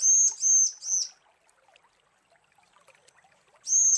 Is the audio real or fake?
real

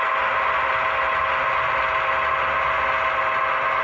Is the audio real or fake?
real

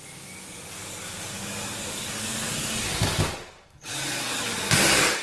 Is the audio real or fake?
fake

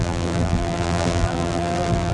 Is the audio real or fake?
fake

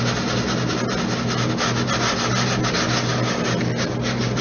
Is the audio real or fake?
real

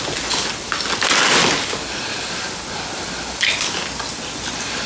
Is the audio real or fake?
real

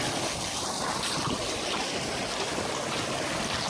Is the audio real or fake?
real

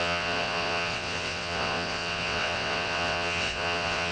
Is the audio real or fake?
fake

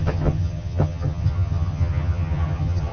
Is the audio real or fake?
fake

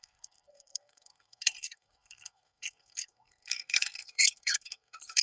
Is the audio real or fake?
fake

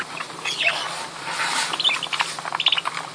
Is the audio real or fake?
real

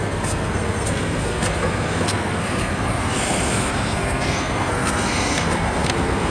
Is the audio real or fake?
fake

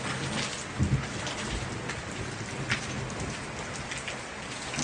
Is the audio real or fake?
real